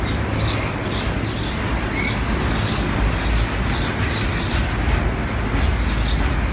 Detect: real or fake real